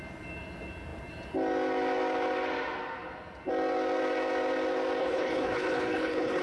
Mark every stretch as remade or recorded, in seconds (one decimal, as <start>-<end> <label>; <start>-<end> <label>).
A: 0.0-5.0 recorded; 5.0-6.4 remade